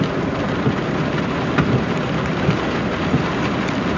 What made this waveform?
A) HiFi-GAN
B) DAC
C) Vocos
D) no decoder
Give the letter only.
D